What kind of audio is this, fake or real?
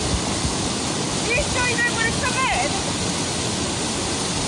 real